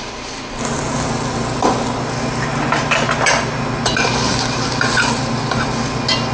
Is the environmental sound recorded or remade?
recorded